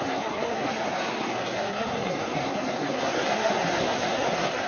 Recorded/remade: remade